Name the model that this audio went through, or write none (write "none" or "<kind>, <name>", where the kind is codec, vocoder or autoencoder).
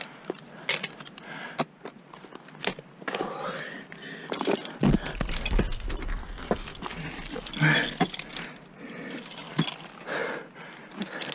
none